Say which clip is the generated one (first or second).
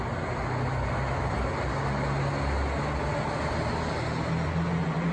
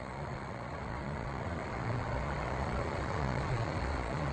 second